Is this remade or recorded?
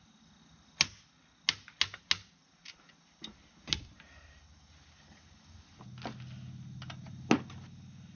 recorded